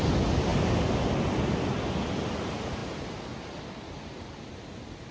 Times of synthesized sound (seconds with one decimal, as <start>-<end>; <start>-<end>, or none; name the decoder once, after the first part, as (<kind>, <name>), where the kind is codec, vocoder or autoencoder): none